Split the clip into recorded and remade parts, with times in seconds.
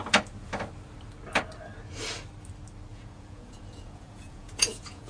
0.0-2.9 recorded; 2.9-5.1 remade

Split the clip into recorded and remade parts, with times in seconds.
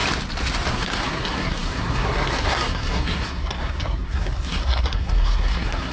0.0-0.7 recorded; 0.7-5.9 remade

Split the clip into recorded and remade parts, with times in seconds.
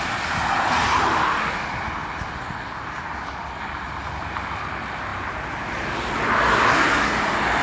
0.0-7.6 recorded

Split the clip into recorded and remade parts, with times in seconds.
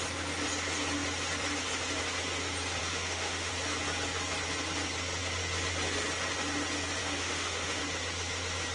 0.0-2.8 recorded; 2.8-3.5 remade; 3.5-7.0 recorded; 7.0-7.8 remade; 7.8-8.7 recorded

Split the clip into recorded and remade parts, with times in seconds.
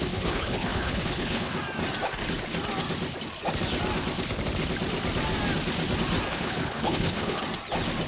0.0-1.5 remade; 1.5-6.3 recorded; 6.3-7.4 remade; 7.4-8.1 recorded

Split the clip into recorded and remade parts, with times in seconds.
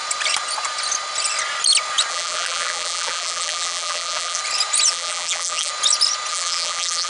0.0-2.1 recorded; 2.1-4.4 remade; 4.4-4.9 recorded; 4.9-5.7 remade; 5.7-6.3 recorded; 6.3-7.1 remade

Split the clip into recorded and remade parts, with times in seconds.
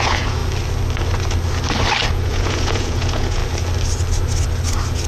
0.0-0.4 remade; 0.4-2.1 recorded; 2.1-3.4 remade; 3.4-5.1 recorded